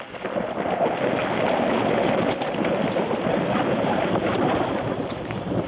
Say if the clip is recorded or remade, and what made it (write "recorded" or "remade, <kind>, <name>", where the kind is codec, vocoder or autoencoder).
recorded